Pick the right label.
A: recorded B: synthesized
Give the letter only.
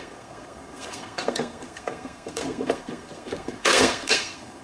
B